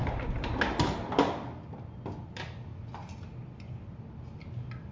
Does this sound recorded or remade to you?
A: recorded